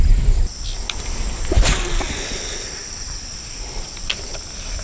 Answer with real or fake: real